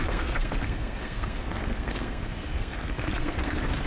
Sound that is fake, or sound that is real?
fake